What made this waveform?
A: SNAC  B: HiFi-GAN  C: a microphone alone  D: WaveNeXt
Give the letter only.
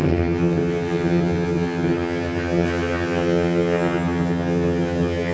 B